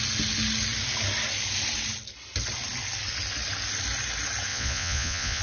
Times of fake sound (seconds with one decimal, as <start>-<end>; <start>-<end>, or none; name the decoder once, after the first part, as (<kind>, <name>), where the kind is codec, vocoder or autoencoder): 4.5-5.4 (vocoder, Vocos)